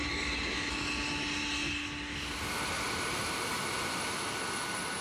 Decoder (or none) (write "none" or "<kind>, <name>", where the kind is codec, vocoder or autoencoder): none